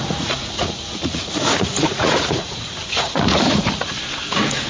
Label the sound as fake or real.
fake